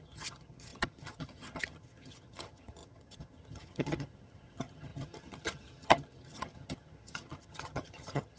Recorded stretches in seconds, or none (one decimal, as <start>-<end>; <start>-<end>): none